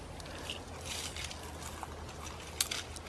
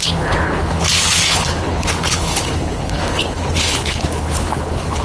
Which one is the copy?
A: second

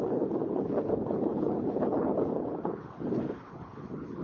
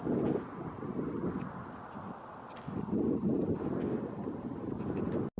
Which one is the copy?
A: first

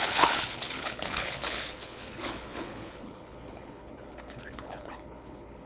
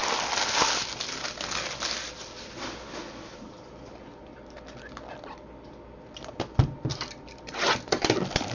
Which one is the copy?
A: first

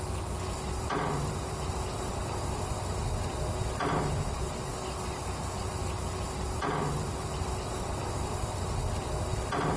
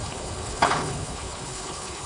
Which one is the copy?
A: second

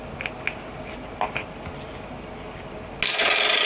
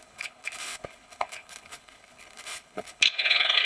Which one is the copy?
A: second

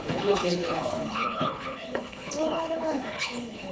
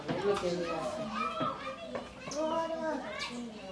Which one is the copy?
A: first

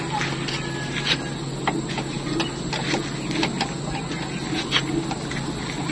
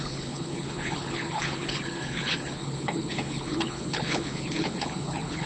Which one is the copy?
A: second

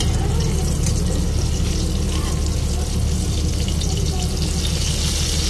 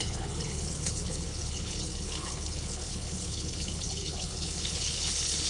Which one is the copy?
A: second